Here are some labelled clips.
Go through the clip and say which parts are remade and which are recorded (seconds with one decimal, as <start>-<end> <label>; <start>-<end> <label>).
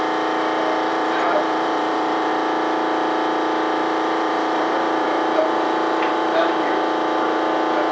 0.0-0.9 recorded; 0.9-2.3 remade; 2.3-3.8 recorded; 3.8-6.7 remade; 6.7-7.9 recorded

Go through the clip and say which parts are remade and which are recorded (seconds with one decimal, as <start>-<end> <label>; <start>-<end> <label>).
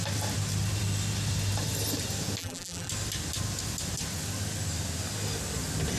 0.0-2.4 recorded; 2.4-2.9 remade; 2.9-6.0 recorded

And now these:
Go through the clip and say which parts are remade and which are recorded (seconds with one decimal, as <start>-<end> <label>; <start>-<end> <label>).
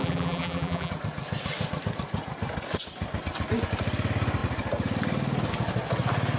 0.0-0.9 remade; 0.9-6.4 recorded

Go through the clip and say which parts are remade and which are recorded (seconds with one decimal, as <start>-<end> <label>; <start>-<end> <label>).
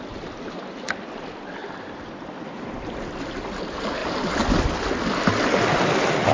0.0-1.6 recorded; 1.6-2.1 remade; 2.1-4.0 recorded; 4.0-4.6 remade; 4.6-6.3 recorded